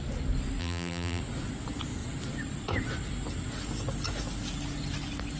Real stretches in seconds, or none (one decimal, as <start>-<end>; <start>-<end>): 0.0-0.6; 1.2-5.4